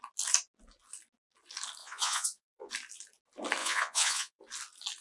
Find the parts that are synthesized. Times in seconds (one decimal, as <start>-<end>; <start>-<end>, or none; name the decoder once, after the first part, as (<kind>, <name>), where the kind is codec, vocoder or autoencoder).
1.8-2.7 (vocoder, Vocos); 3.6-4.4